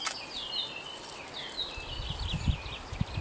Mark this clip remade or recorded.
recorded